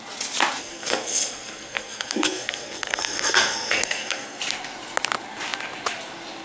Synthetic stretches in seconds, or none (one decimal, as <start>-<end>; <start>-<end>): 0.6-4.4